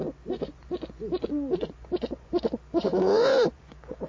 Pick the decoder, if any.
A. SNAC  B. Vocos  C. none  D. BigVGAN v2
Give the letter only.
B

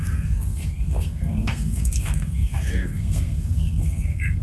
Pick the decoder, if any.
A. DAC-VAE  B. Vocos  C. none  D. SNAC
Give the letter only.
D